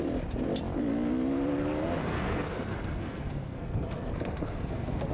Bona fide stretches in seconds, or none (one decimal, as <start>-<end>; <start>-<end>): 0.0-2.0